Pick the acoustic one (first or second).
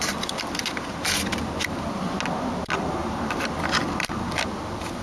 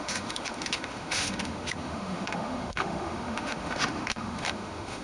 first